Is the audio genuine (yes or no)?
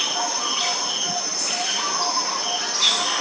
yes